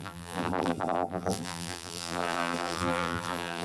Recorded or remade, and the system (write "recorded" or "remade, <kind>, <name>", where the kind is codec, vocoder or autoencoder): remade, vocoder, BigVGAN v2